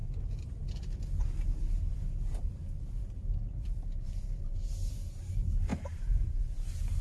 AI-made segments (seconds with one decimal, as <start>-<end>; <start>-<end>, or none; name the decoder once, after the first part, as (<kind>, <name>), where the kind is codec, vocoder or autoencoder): 3.2-5.7 (vocoder, BigVGAN v2); 6.4-7.0